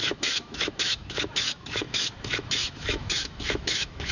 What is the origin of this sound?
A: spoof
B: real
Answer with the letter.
A